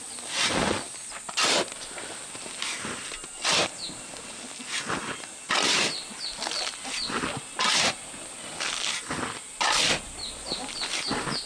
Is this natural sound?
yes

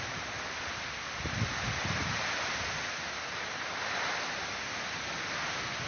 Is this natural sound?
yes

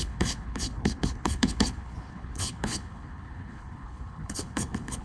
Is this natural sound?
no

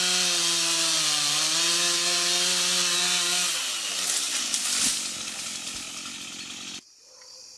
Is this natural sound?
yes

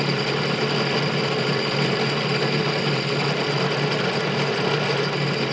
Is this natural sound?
yes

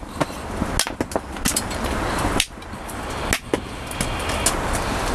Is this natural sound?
yes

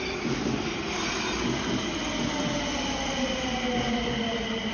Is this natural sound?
yes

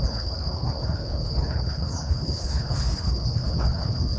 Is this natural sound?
no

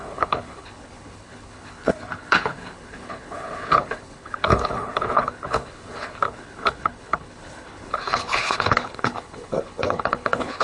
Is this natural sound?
no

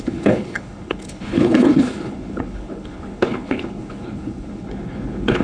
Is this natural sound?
no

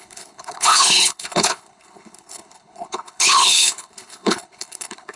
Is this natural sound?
no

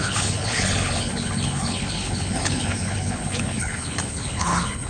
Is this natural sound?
no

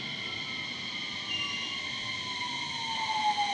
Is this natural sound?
yes